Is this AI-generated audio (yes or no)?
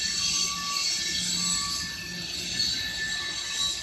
no